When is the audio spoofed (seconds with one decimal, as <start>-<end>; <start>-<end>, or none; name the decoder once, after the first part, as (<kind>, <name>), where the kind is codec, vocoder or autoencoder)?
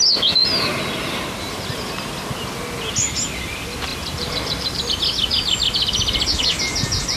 3.9-4.9 (vocoder, BigVGAN v2)